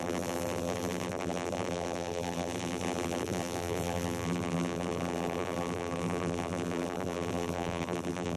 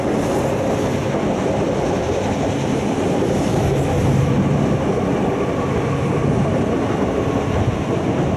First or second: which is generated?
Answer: first